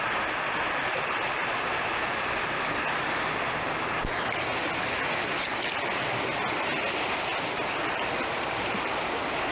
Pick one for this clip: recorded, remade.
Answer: recorded